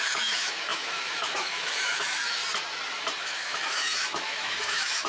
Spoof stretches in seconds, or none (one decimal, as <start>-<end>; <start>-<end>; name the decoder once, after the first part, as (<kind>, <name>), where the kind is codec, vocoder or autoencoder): 0.0-2.4 (autoencoder, DAC-VAE); 3.2-5.1